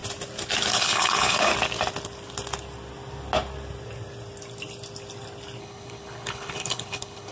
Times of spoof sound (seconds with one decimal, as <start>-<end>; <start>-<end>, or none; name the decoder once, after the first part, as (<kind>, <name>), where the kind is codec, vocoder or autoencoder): 0.7-1.5 (codec, HILCodec); 5.6-7.3